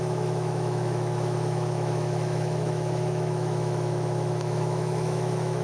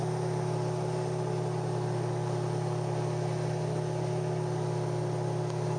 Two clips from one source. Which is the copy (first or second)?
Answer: first